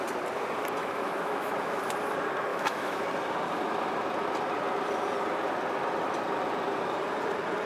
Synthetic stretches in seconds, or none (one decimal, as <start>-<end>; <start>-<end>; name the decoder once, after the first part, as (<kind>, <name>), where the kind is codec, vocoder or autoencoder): 0.8-1.8 (autoencoder, DAC-VAE); 2.5-3.0